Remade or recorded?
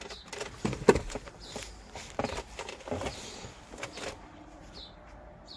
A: recorded